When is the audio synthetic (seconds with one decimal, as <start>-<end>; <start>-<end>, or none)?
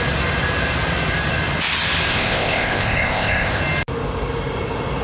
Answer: 2.1-3.6